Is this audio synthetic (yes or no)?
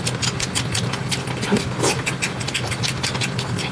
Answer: no